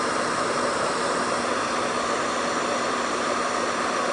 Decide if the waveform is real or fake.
real